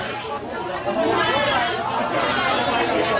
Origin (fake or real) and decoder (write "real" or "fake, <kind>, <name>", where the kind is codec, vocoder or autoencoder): real